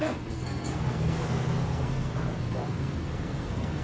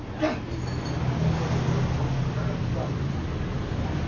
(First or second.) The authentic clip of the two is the second